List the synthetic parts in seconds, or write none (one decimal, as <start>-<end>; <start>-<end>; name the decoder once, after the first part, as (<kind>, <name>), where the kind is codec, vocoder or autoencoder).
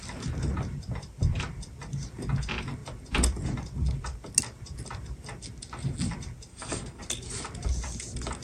6.5-7.0 (codec, SNAC)